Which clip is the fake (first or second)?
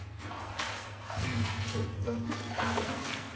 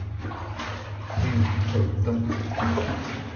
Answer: first